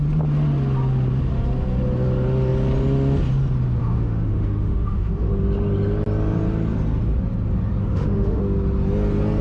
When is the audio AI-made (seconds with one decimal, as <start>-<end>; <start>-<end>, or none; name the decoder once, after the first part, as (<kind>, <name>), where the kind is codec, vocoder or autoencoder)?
3.8-5.3 (autoencoder, DAC-VAE); 7.8-8.4